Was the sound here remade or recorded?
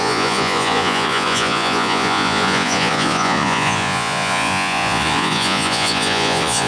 remade